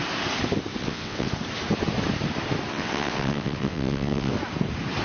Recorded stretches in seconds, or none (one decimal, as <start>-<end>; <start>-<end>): 0.0-0.8; 1.3-2.7; 4.3-5.0